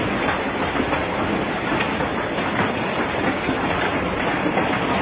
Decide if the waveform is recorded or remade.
recorded